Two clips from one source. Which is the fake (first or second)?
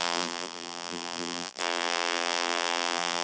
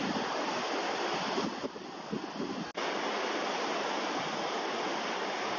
first